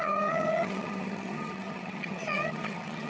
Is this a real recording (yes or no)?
no